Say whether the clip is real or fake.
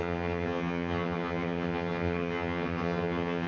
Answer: fake